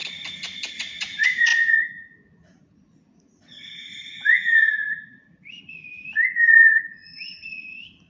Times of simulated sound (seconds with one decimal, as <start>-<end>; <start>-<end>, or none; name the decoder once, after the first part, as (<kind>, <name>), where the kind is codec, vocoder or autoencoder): 0.7-8.1 (vocoder, Vocos)

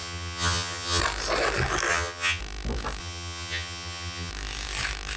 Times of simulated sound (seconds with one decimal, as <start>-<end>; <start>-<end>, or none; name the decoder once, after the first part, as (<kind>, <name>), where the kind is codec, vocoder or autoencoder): 0.0-1.0 (vocoder, HiFi-GAN); 1.9-2.4; 3.0-4.3

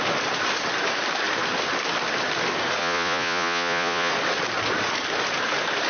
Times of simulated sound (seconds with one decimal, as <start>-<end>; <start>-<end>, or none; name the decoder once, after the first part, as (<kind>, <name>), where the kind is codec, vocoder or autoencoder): 2.8-4.1 (vocoder, Vocos)

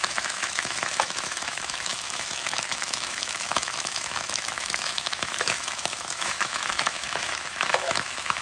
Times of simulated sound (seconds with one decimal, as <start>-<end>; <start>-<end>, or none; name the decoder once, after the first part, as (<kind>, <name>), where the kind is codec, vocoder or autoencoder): 0.0-8.4 (autoencoder, DAC-VAE)